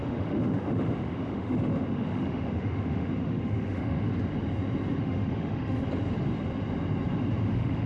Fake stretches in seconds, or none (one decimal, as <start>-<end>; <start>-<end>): 0.0-4.1; 5.0-5.8; 7.5-7.9